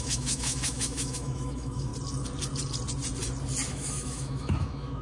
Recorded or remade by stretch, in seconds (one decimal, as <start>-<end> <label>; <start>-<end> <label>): 0.0-1.9 remade; 1.9-3.7 recorded; 3.7-5.0 remade